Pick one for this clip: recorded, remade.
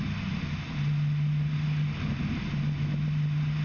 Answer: recorded